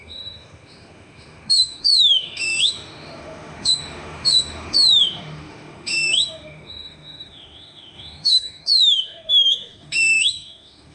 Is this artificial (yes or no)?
yes